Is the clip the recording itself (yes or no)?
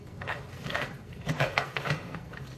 no